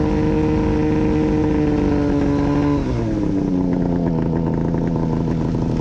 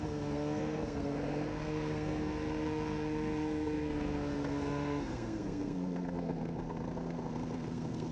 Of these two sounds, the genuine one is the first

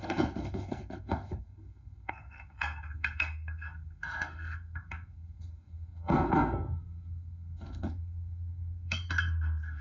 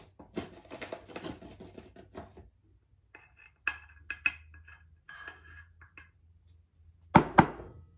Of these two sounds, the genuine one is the second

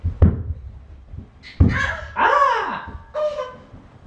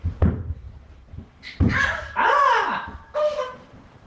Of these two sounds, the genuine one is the first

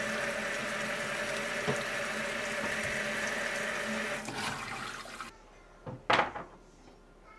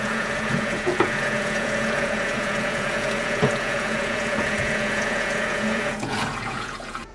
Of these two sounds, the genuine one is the first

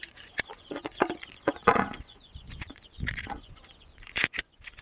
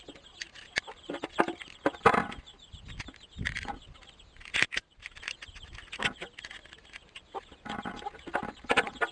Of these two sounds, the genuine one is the second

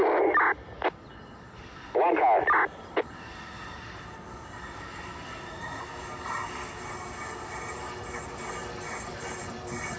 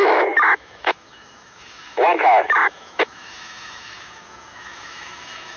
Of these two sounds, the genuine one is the first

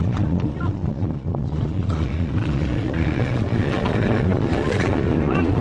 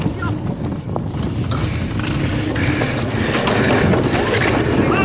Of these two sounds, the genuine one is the second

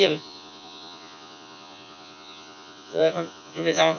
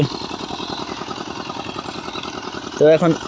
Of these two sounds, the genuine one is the second